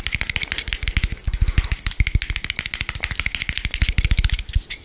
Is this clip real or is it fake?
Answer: real